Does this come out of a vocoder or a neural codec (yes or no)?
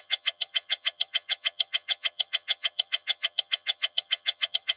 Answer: yes